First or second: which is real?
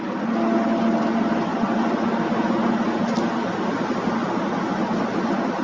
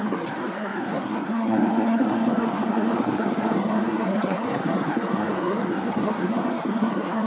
first